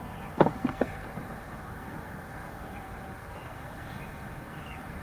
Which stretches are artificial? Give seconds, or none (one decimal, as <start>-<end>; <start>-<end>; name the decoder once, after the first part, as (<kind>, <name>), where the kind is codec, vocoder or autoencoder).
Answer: 0.0-5.0 (codec, SNAC)

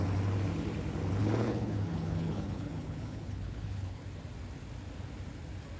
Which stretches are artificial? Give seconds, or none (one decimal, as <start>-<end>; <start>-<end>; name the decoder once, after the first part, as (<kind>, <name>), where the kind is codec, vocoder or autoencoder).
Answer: 1.2-4.0 (codec, HILCodec)

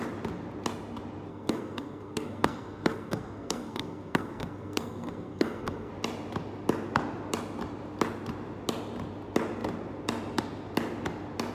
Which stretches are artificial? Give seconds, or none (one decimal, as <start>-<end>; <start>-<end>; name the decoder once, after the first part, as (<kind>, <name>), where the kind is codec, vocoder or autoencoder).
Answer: 1.3-5.9 (codec, SNAC)

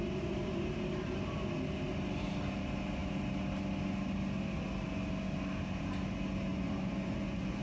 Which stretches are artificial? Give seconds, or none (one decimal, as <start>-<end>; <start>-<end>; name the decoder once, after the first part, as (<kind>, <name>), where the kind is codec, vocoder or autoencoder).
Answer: 6.5-7.6 (vocoder, Vocos)

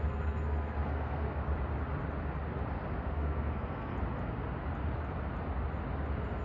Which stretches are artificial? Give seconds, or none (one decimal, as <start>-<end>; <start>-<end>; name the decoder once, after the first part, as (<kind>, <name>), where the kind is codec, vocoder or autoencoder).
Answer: 0.0-1.4 (codec, SNAC); 3.0-3.9

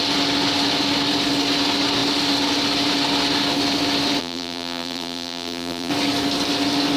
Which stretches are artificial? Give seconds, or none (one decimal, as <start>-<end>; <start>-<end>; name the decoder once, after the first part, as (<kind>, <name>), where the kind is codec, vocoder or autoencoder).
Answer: 4.2-5.9 (vocoder, BigVGAN v2)